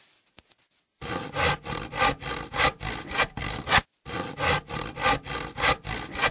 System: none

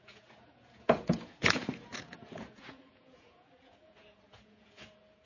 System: vocoder, Vocos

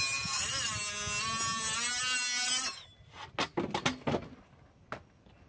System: none